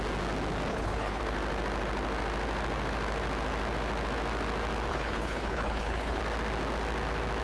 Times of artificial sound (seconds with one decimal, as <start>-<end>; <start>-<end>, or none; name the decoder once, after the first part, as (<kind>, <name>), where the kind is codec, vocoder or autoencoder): 0.7-1.2 (codec, HILCodec); 4.9-6.2